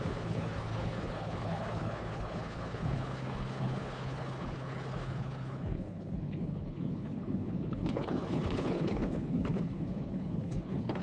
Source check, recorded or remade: remade